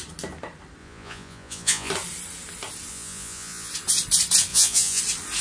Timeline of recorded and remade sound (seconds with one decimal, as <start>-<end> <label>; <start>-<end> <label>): 0.0-0.8 recorded; 0.8-1.9 remade; 1.9-2.9 recorded; 2.9-3.7 remade; 3.7-4.5 recorded; 4.5-5.0 remade; 5.0-5.4 recorded